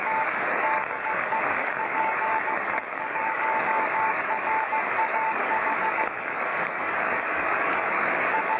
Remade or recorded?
remade